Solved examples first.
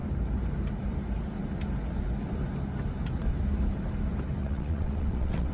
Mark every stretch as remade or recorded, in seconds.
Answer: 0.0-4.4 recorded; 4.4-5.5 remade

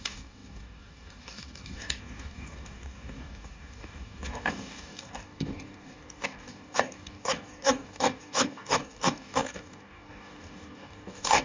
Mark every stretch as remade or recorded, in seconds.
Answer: 0.0-11.4 remade

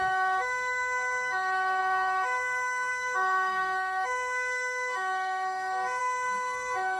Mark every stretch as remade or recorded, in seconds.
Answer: 0.0-7.0 remade

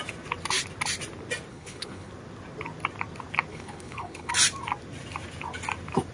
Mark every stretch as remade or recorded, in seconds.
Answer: 0.0-1.5 recorded; 1.5-2.1 remade; 2.1-3.5 recorded; 3.5-4.3 remade; 4.3-6.1 recorded

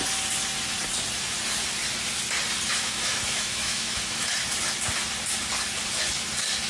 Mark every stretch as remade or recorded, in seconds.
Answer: 0.0-2.7 recorded; 2.7-4.4 remade; 4.4-6.7 recorded

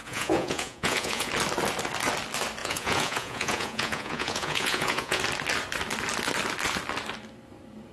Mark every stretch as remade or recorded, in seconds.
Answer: 0.0-1.3 remade; 1.3-2.6 recorded; 2.6-5.2 remade; 5.2-7.9 recorded

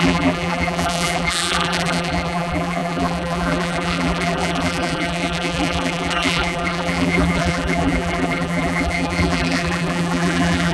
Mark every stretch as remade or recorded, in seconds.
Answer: 0.0-10.7 remade

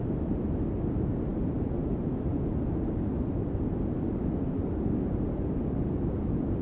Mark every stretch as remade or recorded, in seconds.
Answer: 0.0-6.6 recorded